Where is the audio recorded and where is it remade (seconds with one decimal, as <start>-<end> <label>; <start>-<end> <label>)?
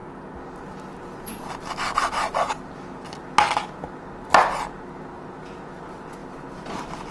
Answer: 0.0-7.1 recorded